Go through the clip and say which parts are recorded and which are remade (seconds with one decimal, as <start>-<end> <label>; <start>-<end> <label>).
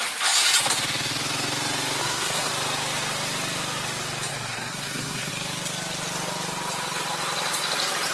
0.0-2.0 recorded; 2.0-2.5 remade; 2.5-4.3 recorded; 4.3-5.3 remade; 5.3-8.1 recorded